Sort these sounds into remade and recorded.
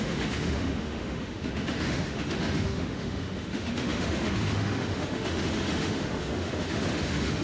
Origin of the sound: remade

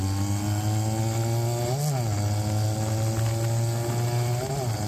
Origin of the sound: recorded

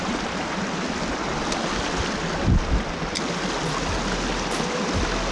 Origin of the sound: recorded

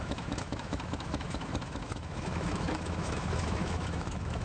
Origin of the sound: remade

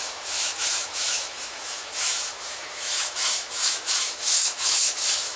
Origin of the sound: remade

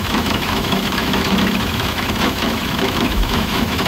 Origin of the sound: remade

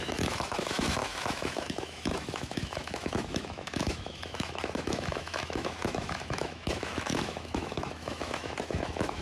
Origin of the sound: remade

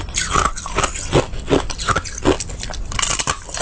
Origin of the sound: recorded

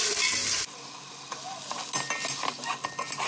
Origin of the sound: recorded